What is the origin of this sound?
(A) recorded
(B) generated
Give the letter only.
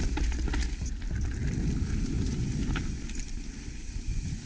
A